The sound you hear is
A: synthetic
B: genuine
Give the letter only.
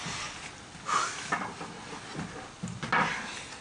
B